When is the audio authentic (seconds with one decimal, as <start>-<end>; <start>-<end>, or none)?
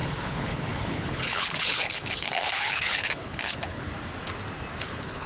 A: 3.9-4.8